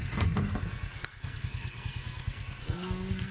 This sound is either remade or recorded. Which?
remade